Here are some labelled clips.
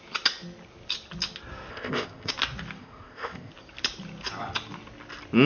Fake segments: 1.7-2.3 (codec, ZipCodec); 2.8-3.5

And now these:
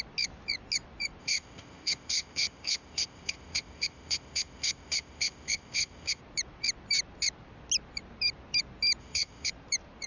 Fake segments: 1.2-6.2 (codec, ZipCodec); 9.0-9.5

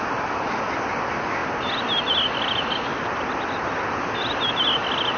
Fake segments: none

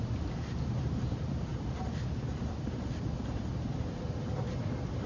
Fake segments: none

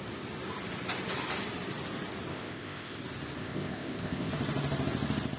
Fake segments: 2.3-3.0 (codec, ZipCodec); 3.4-4.3